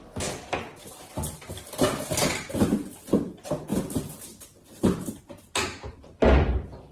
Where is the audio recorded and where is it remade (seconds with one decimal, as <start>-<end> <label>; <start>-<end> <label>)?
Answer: 0.0-2.2 recorded; 2.2-3.2 remade; 3.2-3.7 recorded; 3.7-6.3 remade; 6.3-6.9 recorded